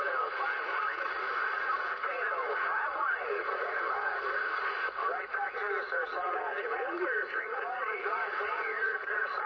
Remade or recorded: remade